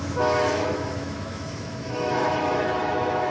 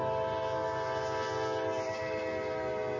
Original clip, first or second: second